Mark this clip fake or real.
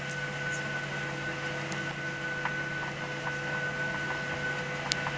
real